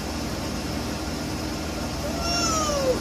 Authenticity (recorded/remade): recorded